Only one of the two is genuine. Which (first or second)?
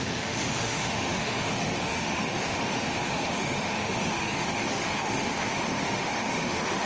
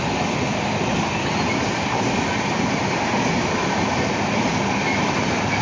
second